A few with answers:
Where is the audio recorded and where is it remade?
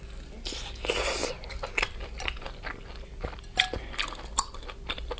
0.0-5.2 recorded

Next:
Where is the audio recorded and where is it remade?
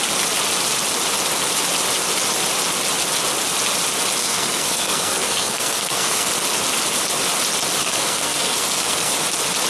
0.0-4.2 recorded; 4.2-6.3 remade; 6.3-7.8 recorded; 7.8-9.1 remade; 9.1-9.7 recorded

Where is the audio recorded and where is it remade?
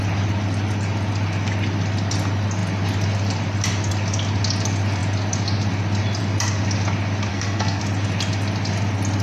0.0-7.3 recorded; 7.3-7.8 remade; 7.8-9.2 recorded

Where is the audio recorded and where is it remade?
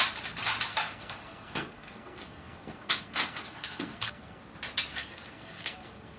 0.0-0.7 recorded; 0.7-4.4 remade; 4.4-4.9 recorded; 4.9-6.2 remade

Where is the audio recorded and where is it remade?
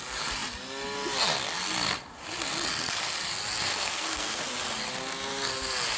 0.0-3.7 recorded; 3.7-4.4 remade; 4.4-6.0 recorded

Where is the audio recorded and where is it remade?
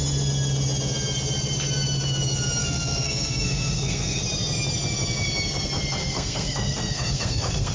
0.0-2.6 recorded; 2.6-4.2 remade; 4.2-6.0 recorded; 6.0-7.7 remade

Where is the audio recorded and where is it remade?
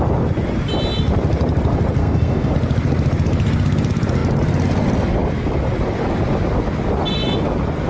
0.0-2.0 recorded; 2.0-2.5 remade; 2.5-7.9 recorded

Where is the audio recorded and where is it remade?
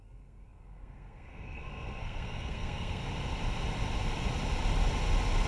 0.0-3.0 remade; 3.0-5.5 recorded